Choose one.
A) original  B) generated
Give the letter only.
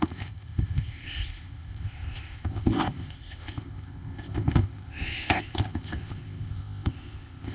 B